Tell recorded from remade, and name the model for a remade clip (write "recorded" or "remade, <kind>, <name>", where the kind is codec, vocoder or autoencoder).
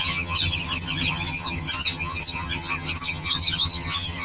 remade, vocoder, HiFi-GAN